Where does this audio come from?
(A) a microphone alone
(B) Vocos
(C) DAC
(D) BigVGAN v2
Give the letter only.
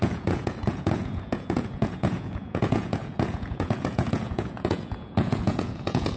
B